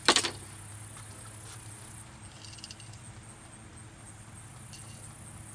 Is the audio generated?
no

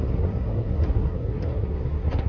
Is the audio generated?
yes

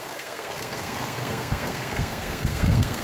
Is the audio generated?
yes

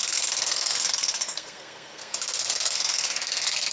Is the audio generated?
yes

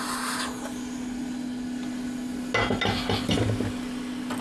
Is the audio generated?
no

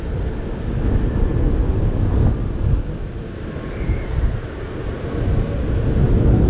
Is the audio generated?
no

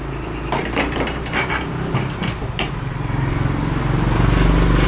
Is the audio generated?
no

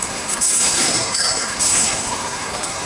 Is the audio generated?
yes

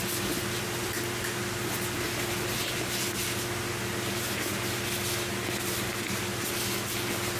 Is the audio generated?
no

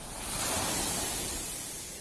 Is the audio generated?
no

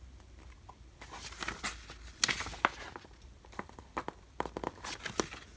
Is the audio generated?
no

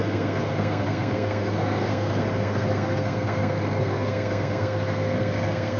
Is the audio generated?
yes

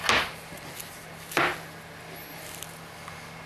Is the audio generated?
no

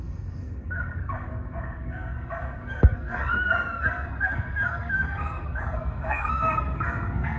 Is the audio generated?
yes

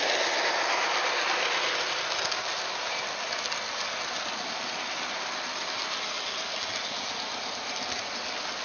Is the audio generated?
no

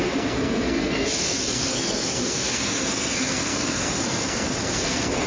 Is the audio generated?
yes